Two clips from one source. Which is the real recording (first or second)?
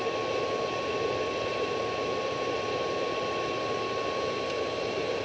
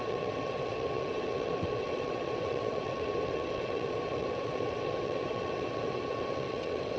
first